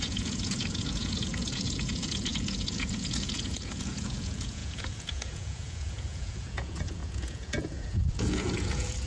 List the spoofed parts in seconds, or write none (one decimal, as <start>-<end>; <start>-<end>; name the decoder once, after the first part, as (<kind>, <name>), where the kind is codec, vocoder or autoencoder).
0.0-9.1 (vocoder, Vocos)